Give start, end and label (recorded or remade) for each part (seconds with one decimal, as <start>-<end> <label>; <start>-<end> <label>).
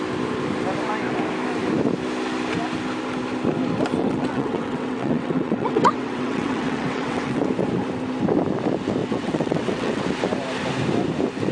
0.0-4.0 recorded; 4.0-7.4 remade; 7.4-9.0 recorded; 9.0-10.0 remade; 10.0-11.5 recorded